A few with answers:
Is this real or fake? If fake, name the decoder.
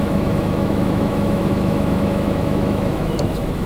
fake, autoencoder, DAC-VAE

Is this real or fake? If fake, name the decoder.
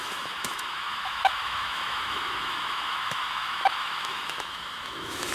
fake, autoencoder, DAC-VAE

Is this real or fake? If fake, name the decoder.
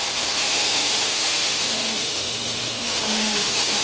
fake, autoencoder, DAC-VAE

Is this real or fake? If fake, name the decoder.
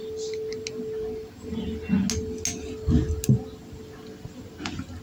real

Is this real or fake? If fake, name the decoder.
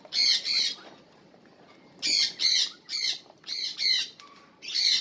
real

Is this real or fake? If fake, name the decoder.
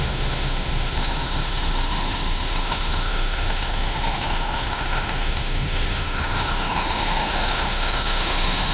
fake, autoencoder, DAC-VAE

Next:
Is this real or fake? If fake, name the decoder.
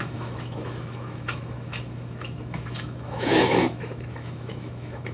fake, autoencoder, DAC-VAE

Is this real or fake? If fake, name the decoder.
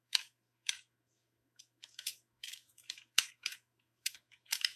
fake, autoencoder, DAC-VAE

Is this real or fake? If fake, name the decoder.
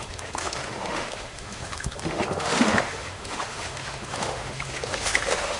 fake, autoencoder, DAC-VAE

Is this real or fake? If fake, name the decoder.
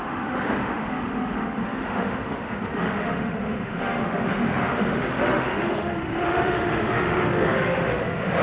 fake, autoencoder, DAC-VAE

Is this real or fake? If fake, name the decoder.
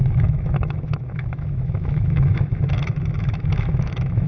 fake, autoencoder, DAC-VAE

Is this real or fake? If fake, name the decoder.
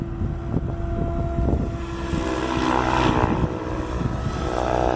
real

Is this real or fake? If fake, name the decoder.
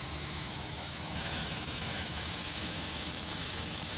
fake, autoencoder, DAC-VAE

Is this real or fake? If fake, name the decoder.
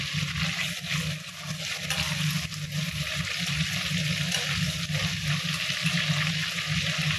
real